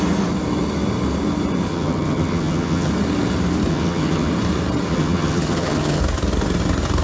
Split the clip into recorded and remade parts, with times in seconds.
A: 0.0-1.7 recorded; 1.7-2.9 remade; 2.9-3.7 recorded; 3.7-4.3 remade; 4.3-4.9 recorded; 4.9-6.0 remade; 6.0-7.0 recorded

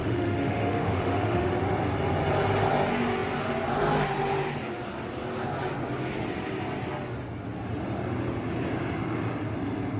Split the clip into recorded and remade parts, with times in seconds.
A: 0.0-1.5 remade; 1.5-10.0 recorded

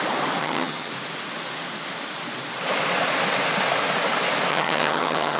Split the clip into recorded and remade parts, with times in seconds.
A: 0.0-0.4 recorded; 0.4-0.9 remade; 0.9-4.5 recorded; 4.5-5.4 remade

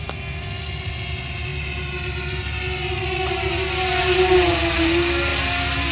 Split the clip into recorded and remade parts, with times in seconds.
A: 0.0-5.9 recorded

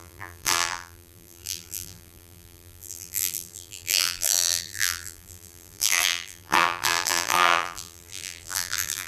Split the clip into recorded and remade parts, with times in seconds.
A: 0.0-9.1 remade

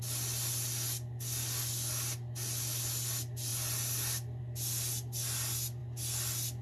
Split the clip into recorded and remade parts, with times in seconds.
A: 0.0-6.6 recorded